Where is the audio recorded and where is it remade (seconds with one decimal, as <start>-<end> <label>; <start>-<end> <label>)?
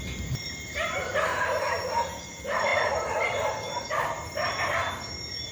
0.0-1.3 remade; 1.3-2.2 recorded; 2.2-5.5 remade